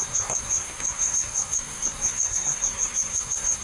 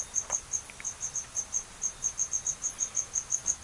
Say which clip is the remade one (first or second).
first